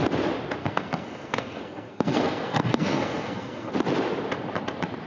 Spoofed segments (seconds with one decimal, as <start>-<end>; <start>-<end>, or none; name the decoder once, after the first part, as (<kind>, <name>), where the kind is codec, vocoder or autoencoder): 0.6-3.7 (codec, SNAC)